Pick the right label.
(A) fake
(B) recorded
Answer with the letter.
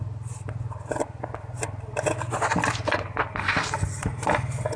B